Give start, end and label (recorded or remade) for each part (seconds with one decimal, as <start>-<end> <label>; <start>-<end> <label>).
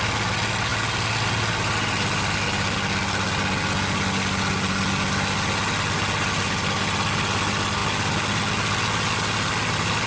0.0-10.1 recorded